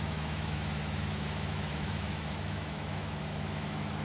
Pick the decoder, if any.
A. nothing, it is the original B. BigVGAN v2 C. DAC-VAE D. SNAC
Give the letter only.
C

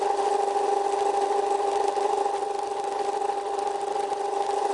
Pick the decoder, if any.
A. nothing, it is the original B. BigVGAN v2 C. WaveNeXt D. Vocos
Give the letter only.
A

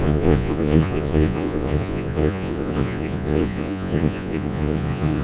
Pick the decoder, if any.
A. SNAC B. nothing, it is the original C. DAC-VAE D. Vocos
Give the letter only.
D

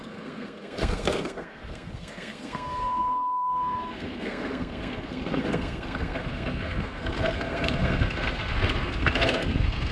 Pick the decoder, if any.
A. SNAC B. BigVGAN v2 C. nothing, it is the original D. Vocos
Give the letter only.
A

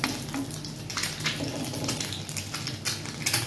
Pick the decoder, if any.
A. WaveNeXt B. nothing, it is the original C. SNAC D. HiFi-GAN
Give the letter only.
B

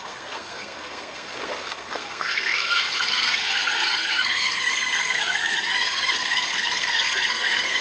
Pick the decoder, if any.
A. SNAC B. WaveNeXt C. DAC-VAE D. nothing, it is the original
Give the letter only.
A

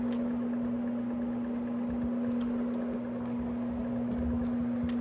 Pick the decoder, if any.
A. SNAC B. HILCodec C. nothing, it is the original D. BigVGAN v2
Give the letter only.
C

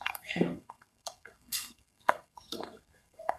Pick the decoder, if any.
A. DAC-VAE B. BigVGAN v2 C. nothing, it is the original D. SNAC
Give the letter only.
D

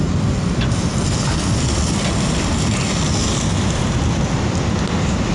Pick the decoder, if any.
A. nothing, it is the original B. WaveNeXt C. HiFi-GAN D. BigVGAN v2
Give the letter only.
A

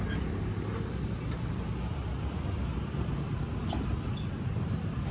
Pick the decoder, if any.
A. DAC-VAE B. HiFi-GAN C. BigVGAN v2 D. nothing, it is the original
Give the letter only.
D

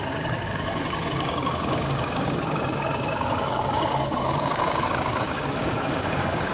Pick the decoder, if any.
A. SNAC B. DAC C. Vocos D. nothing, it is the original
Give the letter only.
B